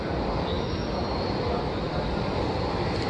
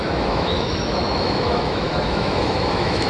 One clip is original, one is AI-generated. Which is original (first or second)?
first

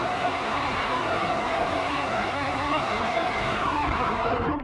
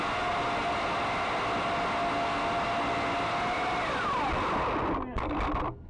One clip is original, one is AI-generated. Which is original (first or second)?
second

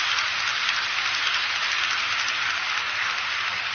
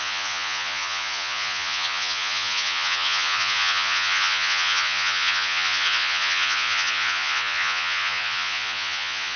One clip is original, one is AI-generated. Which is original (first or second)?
first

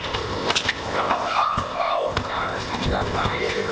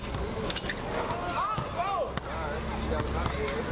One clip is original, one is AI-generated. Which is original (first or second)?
second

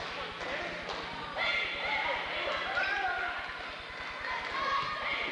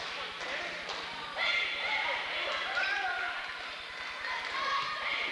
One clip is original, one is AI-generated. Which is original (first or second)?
first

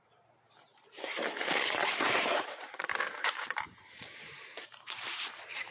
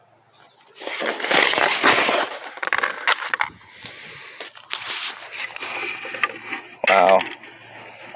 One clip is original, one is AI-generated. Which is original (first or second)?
second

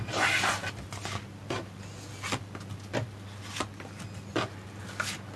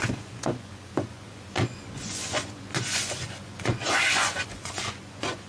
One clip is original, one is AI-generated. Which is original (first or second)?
first